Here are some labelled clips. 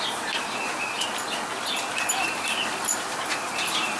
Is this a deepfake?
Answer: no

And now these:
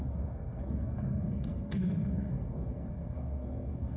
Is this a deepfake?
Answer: yes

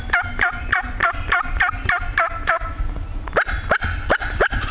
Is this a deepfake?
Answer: no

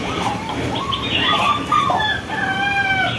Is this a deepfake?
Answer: yes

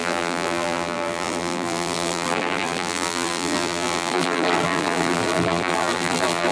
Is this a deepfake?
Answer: yes